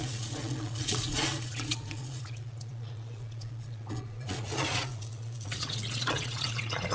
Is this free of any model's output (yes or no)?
no